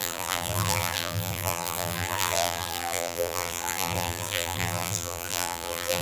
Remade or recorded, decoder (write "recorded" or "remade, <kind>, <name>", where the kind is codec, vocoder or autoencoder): remade, vocoder, BigVGAN v2